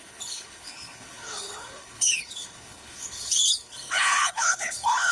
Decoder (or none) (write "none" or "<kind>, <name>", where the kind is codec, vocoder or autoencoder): codec, HILCodec